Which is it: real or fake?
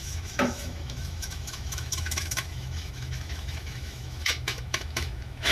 fake